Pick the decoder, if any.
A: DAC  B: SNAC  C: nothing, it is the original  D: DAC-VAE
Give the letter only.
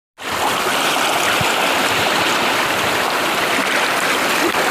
C